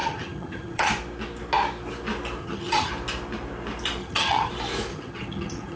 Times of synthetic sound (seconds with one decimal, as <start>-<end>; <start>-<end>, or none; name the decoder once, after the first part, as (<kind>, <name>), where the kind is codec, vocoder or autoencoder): 0.0-0.9 (vocoder, HiFi-GAN); 2.4-2.9; 4.0-4.5; 4.9-5.8